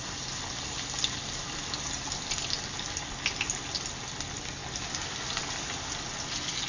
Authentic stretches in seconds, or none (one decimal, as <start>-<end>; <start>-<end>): 0.0-6.7